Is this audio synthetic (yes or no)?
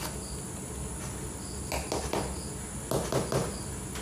no